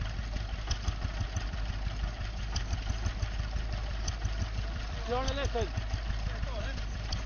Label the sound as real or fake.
real